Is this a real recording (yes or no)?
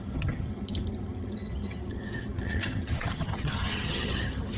no